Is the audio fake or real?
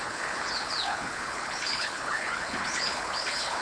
fake